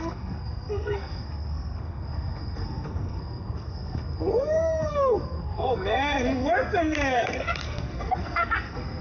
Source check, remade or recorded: remade